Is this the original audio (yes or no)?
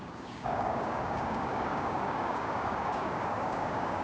no